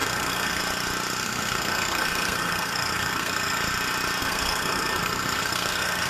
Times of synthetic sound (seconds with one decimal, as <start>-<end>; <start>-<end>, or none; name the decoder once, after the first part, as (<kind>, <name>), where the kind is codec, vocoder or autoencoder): 0.0-0.6 (codec, SNAC); 1.2-3.6; 4.2-6.1